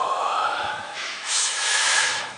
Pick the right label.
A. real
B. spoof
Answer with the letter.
B